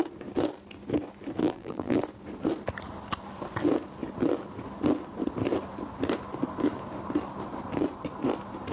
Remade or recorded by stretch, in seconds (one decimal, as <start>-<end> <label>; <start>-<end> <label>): 0.0-1.4 recorded; 1.4-2.0 remade; 2.0-8.7 recorded